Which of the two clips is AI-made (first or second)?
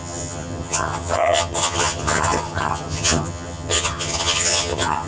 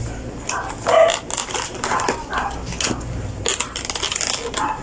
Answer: first